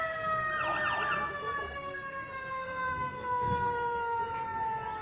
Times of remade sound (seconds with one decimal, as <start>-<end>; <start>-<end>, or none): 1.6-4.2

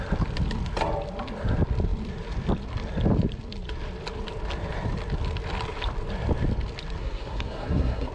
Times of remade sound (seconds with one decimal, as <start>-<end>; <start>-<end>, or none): 7.0-8.1

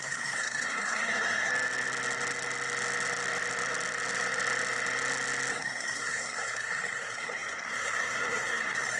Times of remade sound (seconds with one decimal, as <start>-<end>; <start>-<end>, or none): 0.0-1.5; 5.5-9.0

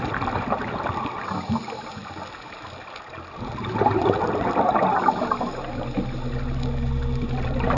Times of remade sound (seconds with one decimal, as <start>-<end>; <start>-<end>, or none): none

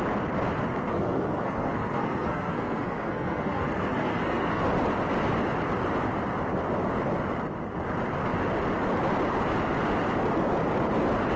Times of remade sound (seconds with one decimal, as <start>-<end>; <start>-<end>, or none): 0.9-4.6

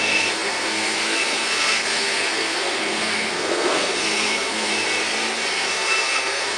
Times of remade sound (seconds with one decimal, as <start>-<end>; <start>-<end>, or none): 0.0-4.7; 5.5-6.6